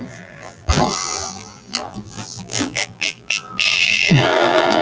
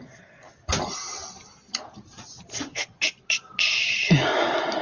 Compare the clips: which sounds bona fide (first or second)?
second